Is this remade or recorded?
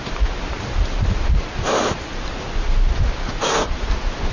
recorded